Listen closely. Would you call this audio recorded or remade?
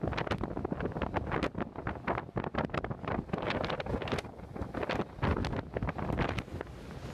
recorded